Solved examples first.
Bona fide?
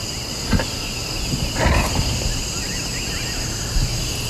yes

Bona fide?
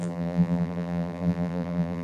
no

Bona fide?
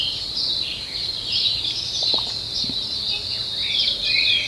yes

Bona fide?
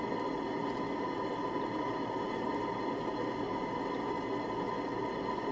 yes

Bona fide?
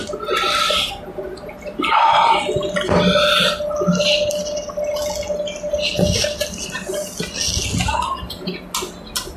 yes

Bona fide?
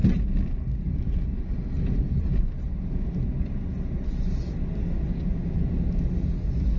yes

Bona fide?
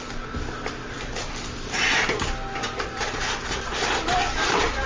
no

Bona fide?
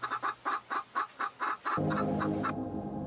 yes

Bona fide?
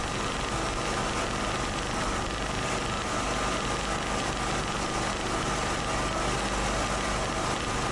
yes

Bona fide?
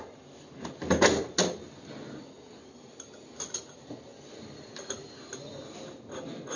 yes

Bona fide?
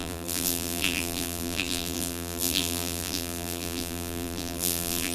no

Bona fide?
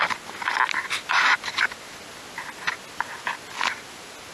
yes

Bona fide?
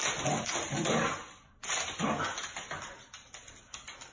yes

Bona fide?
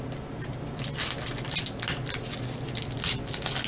yes